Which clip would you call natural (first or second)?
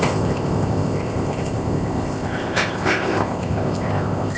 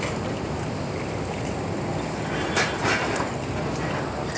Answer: second